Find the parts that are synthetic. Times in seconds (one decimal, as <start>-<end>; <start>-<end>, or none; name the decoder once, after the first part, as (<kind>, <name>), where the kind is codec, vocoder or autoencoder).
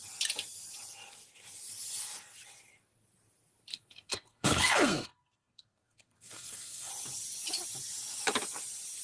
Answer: 3.7-6.9 (codec, SNAC)